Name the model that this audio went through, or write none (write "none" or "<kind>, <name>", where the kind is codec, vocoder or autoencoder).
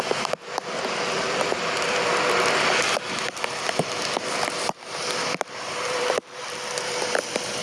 vocoder, BigVGAN v2